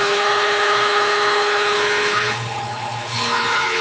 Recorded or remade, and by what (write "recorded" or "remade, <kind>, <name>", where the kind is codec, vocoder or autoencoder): remade, codec, HILCodec